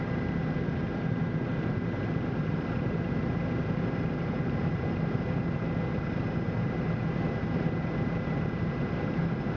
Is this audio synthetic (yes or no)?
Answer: yes